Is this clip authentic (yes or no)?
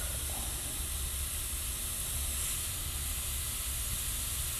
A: yes